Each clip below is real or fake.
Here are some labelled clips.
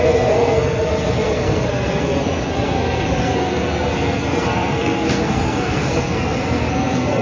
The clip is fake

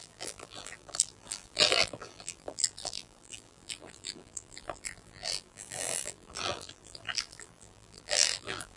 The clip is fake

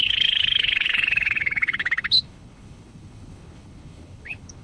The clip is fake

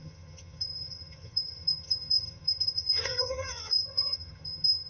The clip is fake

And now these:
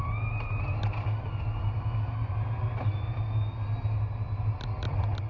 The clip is real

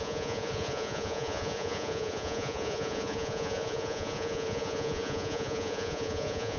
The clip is fake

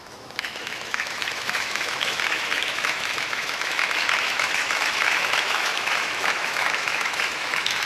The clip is fake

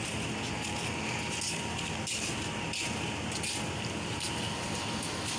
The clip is real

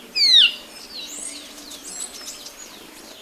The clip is real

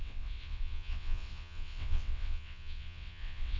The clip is fake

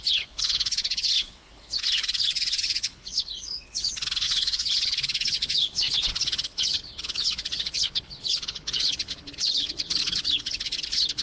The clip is fake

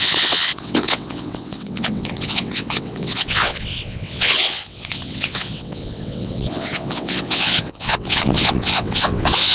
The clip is fake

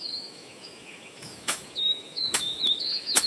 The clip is fake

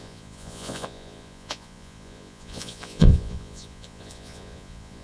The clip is fake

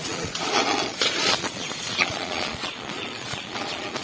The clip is fake